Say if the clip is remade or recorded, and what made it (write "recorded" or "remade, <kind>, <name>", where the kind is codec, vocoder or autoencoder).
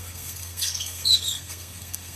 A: remade, codec, SNAC